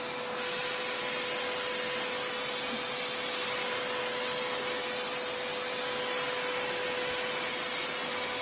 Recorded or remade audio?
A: recorded